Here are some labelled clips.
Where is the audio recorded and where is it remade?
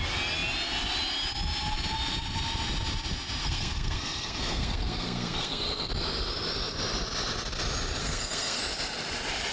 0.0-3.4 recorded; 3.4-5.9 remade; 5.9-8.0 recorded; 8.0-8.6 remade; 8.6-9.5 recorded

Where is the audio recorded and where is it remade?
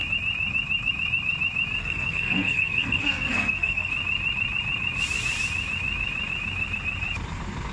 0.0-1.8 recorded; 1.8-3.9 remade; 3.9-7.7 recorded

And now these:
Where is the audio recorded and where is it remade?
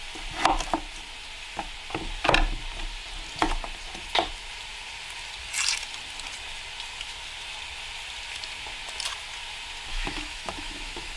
0.0-9.9 recorded; 9.9-11.2 remade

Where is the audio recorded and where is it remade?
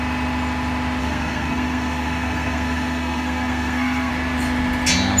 0.0-1.0 recorded; 1.0-4.1 remade; 4.1-5.2 recorded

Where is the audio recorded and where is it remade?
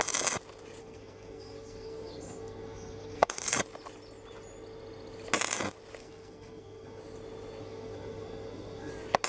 0.0-0.8 recorded; 0.8-3.6 remade; 3.6-6.0 recorded; 6.0-7.0 remade; 7.0-7.6 recorded; 7.6-8.9 remade; 8.9-9.3 recorded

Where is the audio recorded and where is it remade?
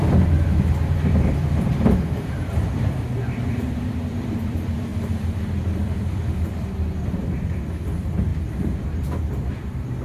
0.0-10.0 remade